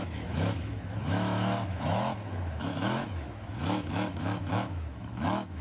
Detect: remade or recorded remade